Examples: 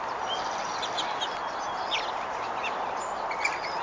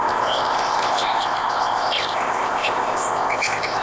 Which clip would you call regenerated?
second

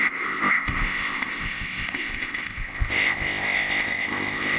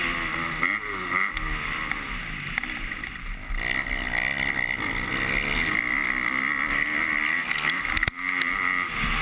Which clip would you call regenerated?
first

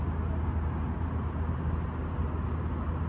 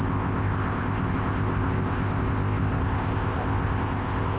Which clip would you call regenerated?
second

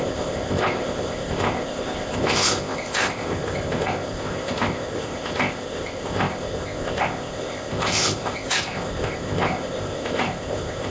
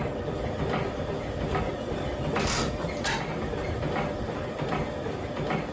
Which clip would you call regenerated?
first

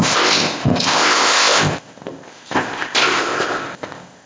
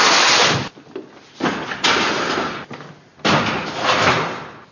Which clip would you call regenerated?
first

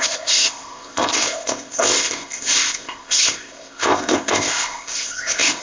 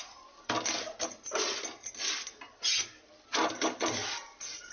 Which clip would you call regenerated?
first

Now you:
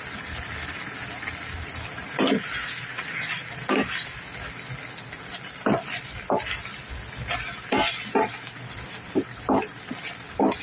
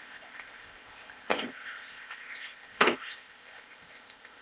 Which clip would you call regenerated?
second